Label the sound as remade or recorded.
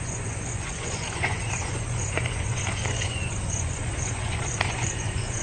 remade